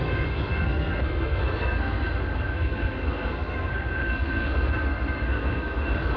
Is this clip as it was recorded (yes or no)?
no